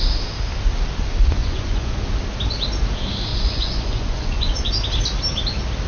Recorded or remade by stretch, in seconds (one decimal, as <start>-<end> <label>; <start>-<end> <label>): 0.0-1.4 recorded; 1.4-2.0 remade; 2.0-3.3 recorded; 3.3-4.7 remade; 4.7-5.9 recorded